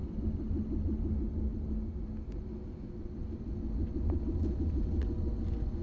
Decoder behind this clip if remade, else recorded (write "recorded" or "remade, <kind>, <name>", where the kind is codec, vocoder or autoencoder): recorded